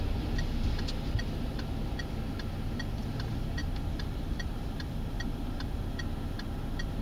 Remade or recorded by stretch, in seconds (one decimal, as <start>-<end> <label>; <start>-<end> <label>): 0.0-3.6 recorded; 3.6-5.8 remade; 5.8-7.0 recorded